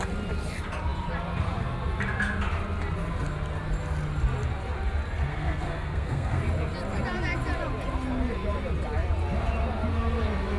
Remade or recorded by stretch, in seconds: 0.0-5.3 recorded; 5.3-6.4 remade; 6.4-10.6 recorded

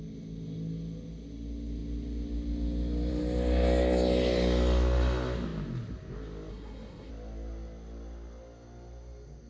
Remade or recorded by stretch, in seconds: 0.0-6.5 recorded; 6.5-7.1 remade; 7.1-9.5 recorded

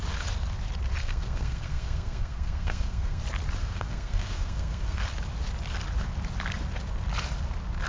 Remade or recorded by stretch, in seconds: 0.0-1.0 recorded; 1.0-3.2 remade; 3.2-3.6 recorded; 3.6-5.0 remade; 5.0-7.9 recorded

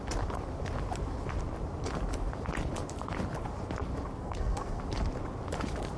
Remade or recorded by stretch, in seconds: 0.0-4.2 recorded; 4.2-4.8 remade; 4.8-6.0 recorded